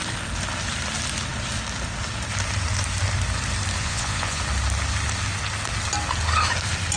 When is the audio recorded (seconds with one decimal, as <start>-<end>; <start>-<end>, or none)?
0.0-3.8; 4.4-7.0